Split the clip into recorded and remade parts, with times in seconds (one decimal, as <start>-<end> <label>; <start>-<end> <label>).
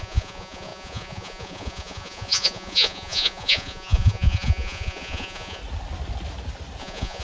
0.0-5.6 remade; 5.6-6.8 recorded; 6.8-7.2 remade